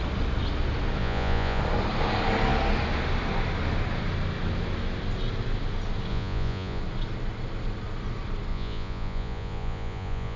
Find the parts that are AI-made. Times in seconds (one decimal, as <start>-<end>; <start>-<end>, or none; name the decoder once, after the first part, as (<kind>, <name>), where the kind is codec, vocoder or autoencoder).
1.0-1.6 (vocoder, Vocos); 6.1-6.8; 8.5-10.4